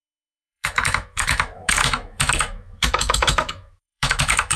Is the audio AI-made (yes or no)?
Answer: yes